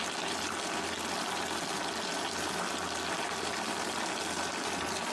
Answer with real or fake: real